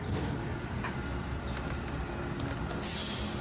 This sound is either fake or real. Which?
real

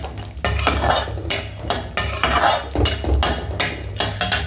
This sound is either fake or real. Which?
real